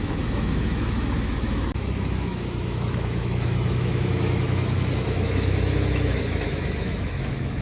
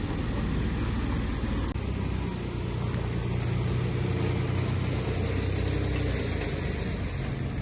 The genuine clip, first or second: second